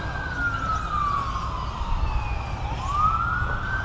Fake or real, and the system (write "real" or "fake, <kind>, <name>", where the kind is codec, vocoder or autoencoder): real